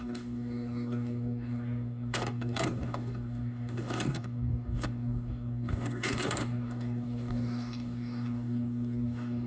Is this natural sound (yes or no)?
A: no